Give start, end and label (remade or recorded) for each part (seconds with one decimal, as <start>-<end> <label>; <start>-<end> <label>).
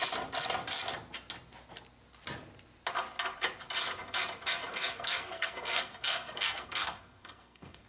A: 0.0-4.7 recorded; 4.7-7.9 remade